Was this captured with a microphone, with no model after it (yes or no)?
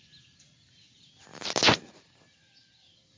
yes